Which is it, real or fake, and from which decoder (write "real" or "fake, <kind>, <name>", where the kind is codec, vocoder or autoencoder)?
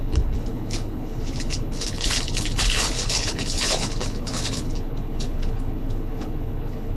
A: fake, codec, HILCodec